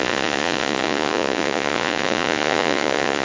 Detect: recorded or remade remade